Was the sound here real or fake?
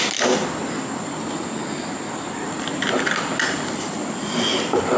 real